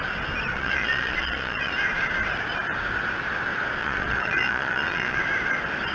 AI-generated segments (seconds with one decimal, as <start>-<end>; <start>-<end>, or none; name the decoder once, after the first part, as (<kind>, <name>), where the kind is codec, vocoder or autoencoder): 0.5-1.7 (vocoder, Vocos); 3.8-5.2